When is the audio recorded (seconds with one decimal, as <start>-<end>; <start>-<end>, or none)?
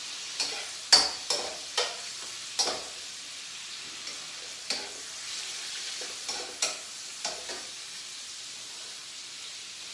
0.0-9.9